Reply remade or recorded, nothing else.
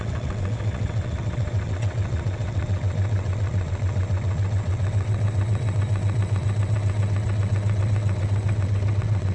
remade